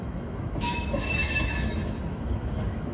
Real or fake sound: fake